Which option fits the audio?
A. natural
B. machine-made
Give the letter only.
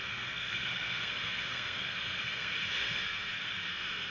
B